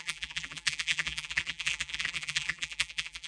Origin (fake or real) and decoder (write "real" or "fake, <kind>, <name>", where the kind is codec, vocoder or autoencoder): fake, vocoder, BigVGAN v2